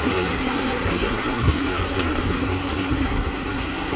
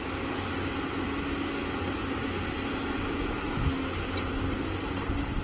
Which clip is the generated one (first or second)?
first